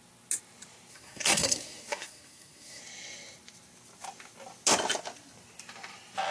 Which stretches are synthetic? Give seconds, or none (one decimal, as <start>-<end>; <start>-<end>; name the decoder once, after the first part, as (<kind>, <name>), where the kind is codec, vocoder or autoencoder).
0.9-2.8 (codec, SNAC)

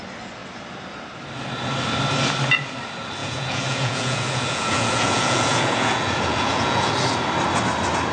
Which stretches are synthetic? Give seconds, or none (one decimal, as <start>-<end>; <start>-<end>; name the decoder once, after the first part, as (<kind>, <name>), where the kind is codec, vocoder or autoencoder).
3.2-6.9 (vocoder, Vocos)

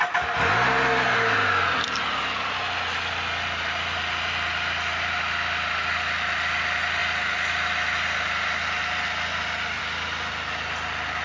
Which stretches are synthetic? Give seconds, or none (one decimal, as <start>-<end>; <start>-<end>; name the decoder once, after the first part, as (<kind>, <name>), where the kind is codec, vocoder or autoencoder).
none

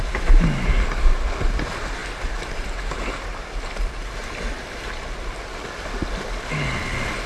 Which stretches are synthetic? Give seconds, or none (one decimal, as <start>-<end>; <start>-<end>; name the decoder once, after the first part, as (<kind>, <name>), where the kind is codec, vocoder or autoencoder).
none

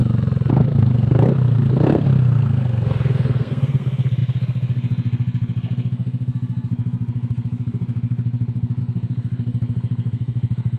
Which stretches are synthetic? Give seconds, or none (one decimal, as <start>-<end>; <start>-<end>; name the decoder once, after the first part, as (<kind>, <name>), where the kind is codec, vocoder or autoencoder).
0.5-10.8 (codec, SNAC)